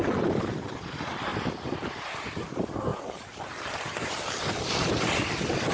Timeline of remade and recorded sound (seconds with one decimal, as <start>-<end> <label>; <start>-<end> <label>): 0.0-1.3 recorded; 1.3-2.1 remade; 2.1-2.9 recorded; 2.9-5.2 remade; 5.2-5.7 recorded